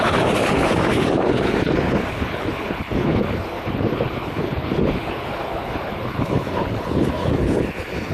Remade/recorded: remade